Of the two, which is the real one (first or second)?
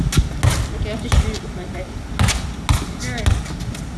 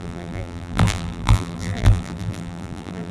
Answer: first